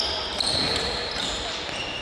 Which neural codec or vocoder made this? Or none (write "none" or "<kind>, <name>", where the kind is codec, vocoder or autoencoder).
none